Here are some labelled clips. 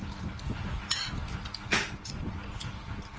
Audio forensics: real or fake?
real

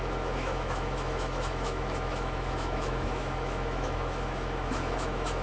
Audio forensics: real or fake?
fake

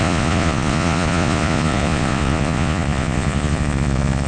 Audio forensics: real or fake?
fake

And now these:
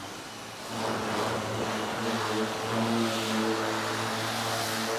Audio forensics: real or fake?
real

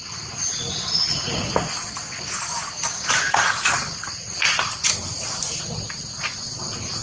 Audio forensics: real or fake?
real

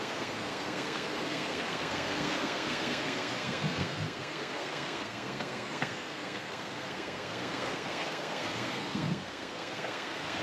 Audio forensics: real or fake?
fake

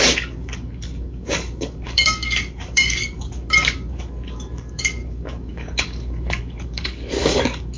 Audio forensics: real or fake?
fake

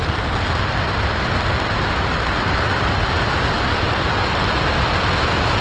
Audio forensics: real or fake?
real